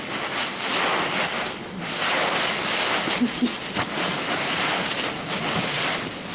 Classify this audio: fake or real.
real